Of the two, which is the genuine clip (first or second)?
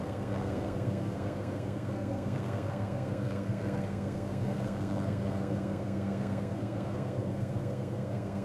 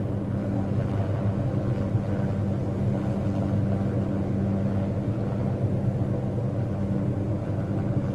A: second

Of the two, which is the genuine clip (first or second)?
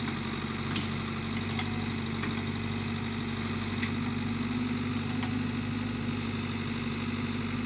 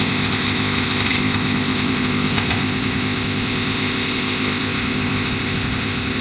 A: first